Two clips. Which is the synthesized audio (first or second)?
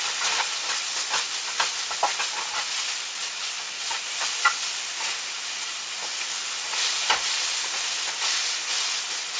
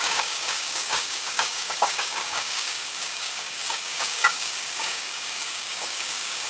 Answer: second